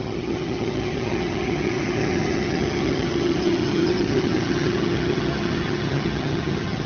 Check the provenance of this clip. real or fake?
fake